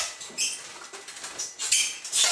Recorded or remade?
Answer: recorded